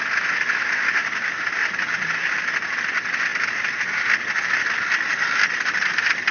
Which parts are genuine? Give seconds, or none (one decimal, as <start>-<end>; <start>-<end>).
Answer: 0.0-6.3